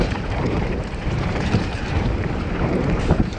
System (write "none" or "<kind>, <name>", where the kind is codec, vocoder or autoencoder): vocoder, BigVGAN v2